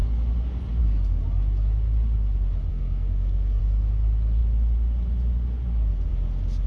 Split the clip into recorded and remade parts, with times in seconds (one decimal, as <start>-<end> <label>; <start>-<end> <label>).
0.0-2.7 recorded; 2.7-3.6 remade; 3.6-6.7 recorded